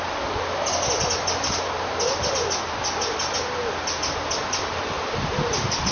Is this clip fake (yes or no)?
no